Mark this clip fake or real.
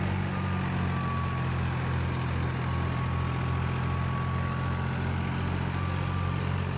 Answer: real